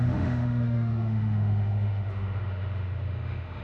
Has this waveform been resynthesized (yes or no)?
yes